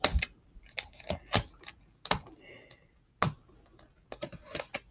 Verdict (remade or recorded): recorded